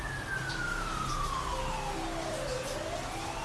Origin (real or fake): real